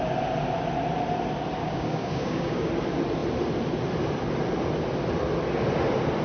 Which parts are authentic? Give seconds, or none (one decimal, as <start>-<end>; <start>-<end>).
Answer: 0.0-1.6; 2.7-6.2